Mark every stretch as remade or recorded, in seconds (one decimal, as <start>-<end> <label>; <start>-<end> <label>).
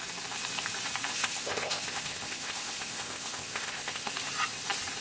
0.0-1.1 recorded; 1.1-4.1 remade; 4.1-5.0 recorded